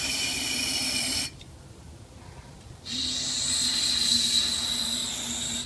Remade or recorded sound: recorded